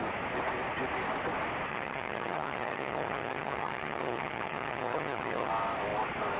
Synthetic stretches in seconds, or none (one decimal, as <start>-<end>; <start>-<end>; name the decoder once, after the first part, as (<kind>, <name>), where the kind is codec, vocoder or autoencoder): 1.7-5.5 (vocoder, HiFi-GAN)